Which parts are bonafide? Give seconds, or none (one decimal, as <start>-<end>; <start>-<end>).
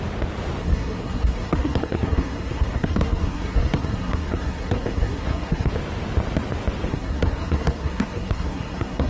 0.0-0.6; 5.7-6.9